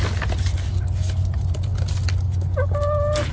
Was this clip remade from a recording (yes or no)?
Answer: no